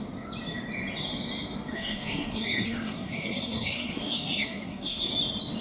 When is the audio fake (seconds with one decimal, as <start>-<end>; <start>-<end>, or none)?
1.7-5.1